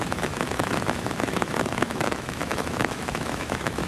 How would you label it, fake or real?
fake